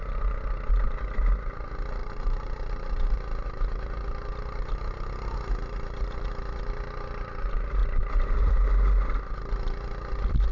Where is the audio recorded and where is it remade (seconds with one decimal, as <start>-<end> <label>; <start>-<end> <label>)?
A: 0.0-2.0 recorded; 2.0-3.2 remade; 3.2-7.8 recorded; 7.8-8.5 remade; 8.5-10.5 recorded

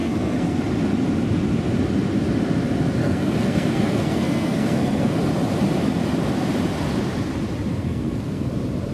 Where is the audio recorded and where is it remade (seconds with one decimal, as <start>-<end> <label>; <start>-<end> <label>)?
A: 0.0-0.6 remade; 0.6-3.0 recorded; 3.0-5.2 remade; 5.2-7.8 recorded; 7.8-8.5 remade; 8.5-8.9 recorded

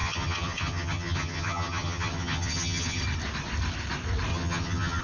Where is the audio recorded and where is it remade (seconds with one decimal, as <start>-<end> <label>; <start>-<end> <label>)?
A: 0.0-3.0 remade; 3.0-4.3 recorded; 4.3-5.0 remade